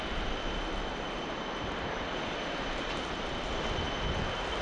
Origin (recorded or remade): recorded